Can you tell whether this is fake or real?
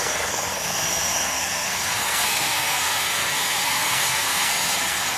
fake